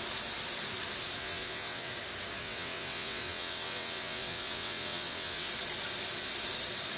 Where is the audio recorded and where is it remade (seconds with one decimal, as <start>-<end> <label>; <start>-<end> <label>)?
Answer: 0.0-1.2 recorded; 1.2-1.9 remade; 1.9-2.4 recorded; 2.4-5.5 remade; 5.5-7.0 recorded